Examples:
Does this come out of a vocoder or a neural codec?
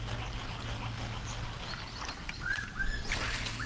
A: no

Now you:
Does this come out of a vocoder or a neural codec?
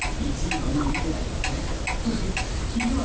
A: no